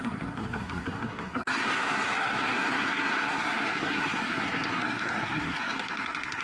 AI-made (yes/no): yes